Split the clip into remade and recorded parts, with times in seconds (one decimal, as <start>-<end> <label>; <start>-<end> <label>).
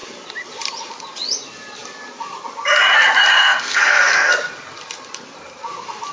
0.0-3.4 recorded; 3.4-4.3 remade; 4.3-6.1 recorded